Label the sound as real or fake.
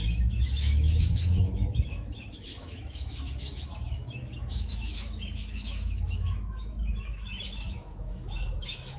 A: fake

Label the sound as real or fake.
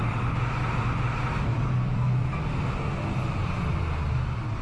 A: real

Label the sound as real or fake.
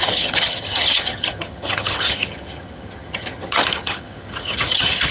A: fake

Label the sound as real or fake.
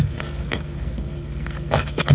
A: fake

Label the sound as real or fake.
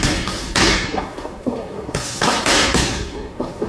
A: fake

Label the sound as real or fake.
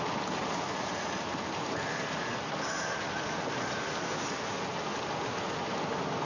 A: real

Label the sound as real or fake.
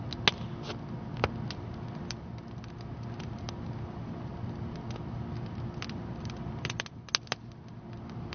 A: real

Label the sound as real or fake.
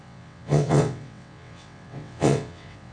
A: fake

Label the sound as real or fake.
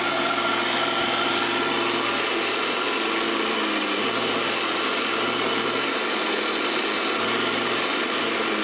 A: real